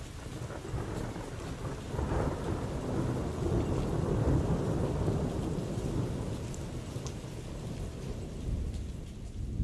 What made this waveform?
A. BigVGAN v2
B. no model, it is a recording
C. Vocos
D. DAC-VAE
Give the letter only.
B